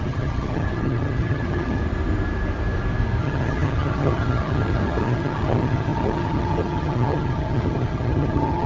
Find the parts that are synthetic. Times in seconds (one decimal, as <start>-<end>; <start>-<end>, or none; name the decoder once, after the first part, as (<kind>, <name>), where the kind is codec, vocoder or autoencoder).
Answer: 0.0-1.8 (vocoder, HiFi-GAN); 3.2-8.7